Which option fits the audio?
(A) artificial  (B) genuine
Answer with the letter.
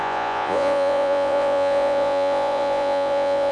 A